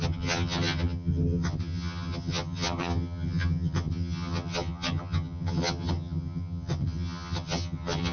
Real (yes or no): no